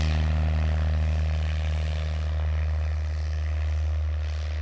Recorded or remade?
recorded